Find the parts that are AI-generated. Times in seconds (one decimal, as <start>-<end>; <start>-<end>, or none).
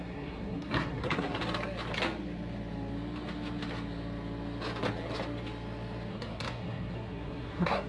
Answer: 0.0-1.4; 6.1-7.9